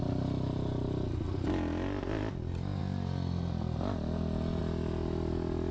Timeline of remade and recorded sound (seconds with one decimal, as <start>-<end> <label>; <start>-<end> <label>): 0.0-5.7 recorded